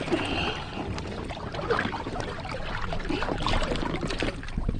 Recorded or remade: recorded